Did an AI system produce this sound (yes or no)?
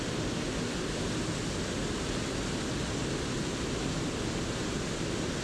no